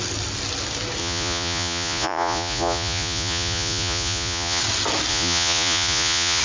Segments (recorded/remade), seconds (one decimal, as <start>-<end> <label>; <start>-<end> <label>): 0.0-1.0 recorded; 1.0-4.6 remade; 4.6-5.1 recorded; 5.1-6.4 remade